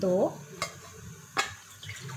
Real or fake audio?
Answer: real